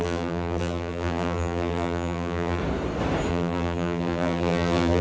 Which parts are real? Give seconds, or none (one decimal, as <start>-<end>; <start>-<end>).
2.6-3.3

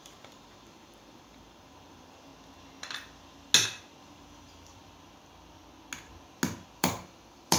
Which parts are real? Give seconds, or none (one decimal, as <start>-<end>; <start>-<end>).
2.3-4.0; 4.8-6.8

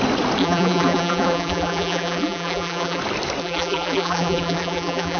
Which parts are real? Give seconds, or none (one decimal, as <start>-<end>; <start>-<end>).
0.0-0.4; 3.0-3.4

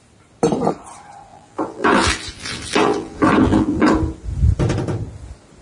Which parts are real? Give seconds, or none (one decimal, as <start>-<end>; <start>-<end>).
0.0-1.3; 3.9-5.6